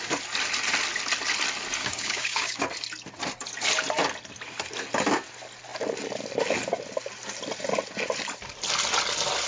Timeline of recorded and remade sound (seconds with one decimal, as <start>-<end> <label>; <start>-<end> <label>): 0.0-1.8 recorded; 1.8-2.6 remade; 2.6-9.5 recorded